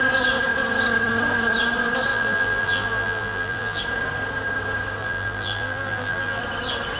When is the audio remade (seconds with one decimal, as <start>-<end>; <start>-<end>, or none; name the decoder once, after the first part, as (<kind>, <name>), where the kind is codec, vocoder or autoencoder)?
2.1-3.8 (vocoder, BigVGAN v2); 5.0-6.4

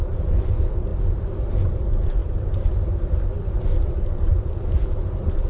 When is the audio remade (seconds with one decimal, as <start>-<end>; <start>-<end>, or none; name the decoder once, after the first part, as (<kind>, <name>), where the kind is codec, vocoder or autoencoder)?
0.0-0.9 (vocoder, BigVGAN v2); 1.7-5.5

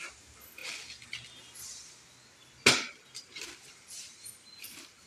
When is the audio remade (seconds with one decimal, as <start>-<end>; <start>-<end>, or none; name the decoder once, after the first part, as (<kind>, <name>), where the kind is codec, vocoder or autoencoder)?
0.0-0.6 (vocoder, BigVGAN v2); 3.7-5.1